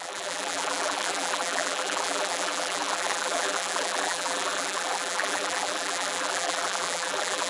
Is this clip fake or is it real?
fake